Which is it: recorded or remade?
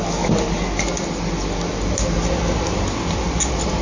recorded